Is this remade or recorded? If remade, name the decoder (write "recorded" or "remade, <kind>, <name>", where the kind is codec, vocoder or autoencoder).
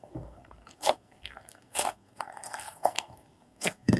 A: remade, codec, SNAC